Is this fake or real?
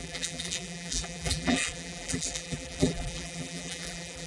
fake